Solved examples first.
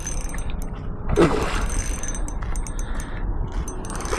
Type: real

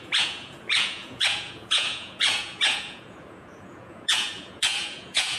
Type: fake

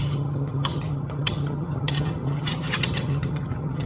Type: fake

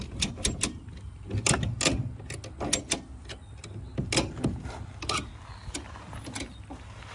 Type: real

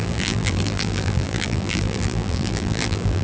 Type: fake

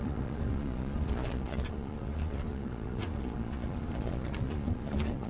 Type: fake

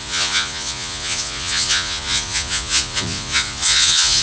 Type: fake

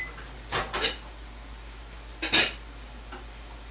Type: real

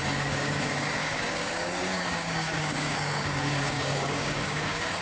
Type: fake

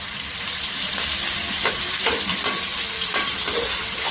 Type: real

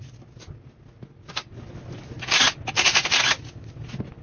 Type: real